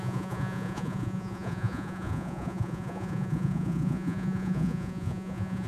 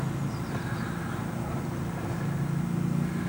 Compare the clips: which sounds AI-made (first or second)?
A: first